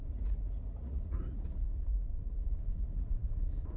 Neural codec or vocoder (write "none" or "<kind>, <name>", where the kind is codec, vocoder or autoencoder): vocoder, Vocos